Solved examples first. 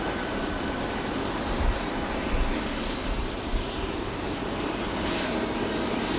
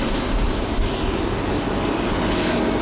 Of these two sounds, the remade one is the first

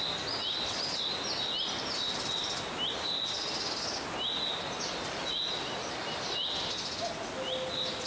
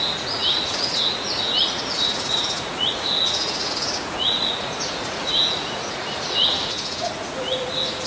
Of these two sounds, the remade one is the second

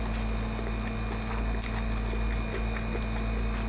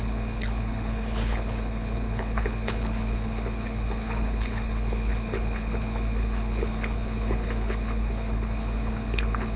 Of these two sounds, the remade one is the second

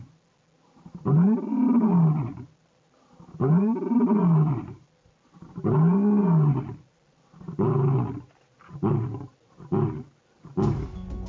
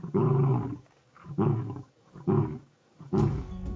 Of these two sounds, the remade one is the second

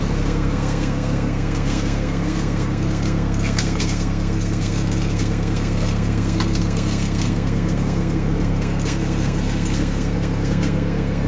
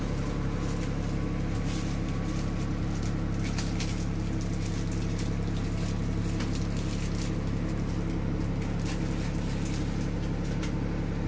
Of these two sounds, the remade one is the first